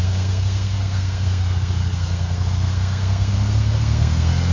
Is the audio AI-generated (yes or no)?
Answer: yes